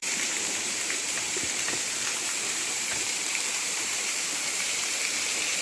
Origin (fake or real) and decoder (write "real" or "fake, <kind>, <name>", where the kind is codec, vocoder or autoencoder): fake, vocoder, BigVGAN v2